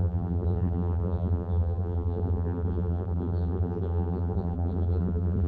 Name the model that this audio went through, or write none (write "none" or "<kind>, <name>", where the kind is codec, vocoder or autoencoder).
vocoder, BigVGAN v2